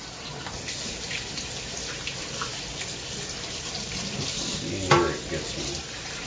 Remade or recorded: recorded